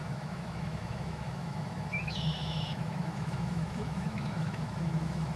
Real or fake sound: fake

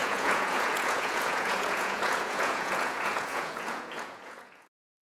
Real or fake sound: fake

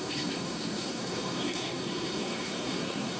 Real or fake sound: fake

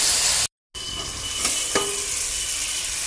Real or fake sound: real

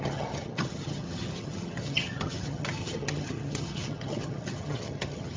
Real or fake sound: fake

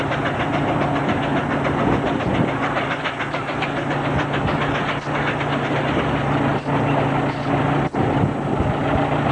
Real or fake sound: real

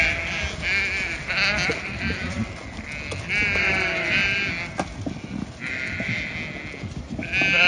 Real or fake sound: real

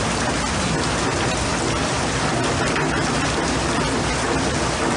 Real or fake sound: real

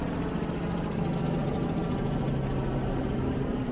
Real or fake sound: real